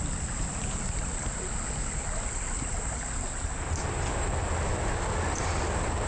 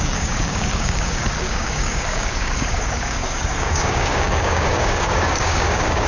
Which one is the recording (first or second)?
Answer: first